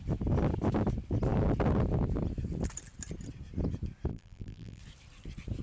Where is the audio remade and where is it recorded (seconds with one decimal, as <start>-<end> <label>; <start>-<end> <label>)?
0.0-4.1 recorded; 4.1-4.8 remade; 4.8-5.6 recorded